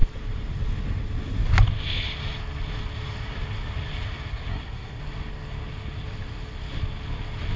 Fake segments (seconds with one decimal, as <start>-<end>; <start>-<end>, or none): 4.3-5.0